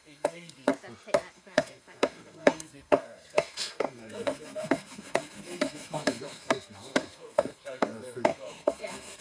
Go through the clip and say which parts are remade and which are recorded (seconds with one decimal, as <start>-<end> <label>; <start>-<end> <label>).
0.0-0.7 remade; 0.7-1.3 recorded; 1.3-9.2 remade